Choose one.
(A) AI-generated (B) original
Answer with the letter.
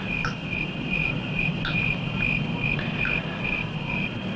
B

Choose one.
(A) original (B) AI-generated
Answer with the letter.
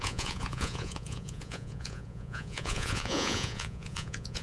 B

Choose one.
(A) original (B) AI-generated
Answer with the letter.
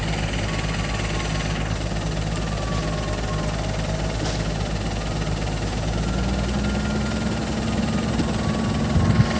A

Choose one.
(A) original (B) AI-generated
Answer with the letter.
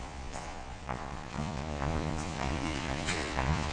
B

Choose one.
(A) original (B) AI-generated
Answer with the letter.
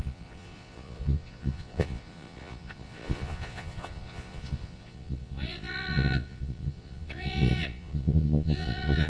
B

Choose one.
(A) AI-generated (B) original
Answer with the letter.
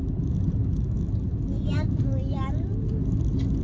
B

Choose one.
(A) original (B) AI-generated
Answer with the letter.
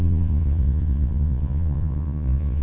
B